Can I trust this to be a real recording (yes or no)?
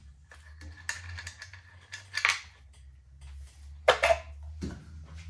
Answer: yes